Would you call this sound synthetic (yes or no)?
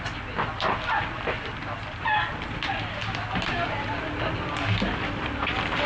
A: no